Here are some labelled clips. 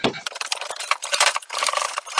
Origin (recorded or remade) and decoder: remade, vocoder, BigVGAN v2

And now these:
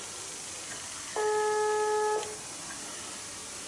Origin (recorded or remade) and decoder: recorded